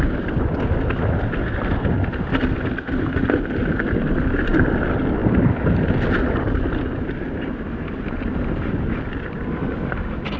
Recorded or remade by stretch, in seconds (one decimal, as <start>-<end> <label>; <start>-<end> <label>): 0.0-10.4 recorded